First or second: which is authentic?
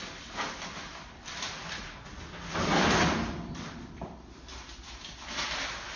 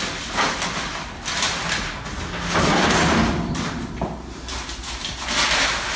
second